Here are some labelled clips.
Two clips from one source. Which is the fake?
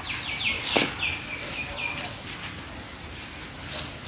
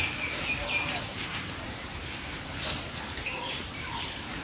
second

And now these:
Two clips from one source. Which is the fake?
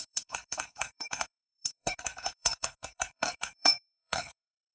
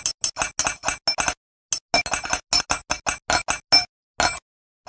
first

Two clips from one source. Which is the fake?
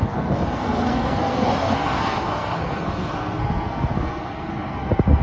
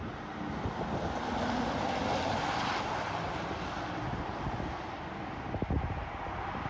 first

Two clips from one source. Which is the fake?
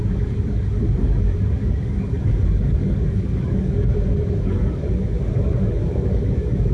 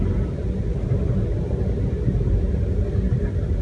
first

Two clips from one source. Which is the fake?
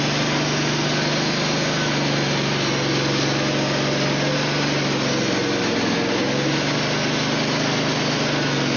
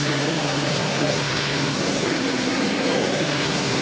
second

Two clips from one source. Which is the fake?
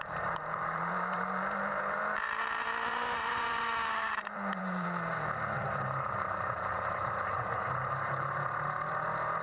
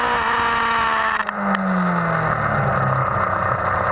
first